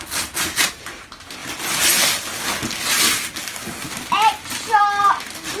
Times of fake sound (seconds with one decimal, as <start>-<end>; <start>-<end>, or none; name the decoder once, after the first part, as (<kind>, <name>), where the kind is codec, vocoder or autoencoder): none